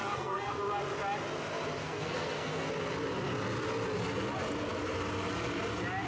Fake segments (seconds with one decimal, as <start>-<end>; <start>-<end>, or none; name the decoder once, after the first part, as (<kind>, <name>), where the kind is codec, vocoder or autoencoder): 0.0-0.6 (codec, SNAC); 1.8-2.7